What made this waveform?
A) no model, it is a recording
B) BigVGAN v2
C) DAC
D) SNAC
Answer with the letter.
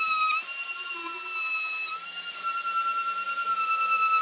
A